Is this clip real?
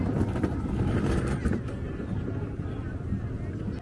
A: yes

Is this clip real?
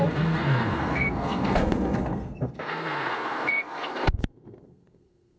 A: no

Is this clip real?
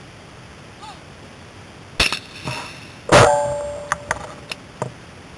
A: yes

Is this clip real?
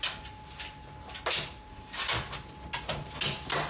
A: yes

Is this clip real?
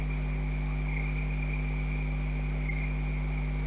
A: yes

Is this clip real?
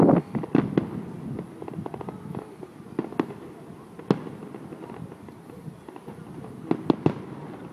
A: yes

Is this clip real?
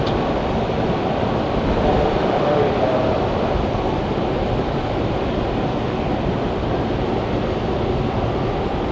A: yes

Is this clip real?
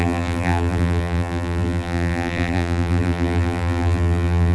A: no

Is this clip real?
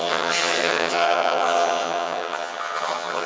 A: no